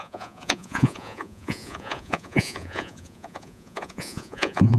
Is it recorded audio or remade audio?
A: remade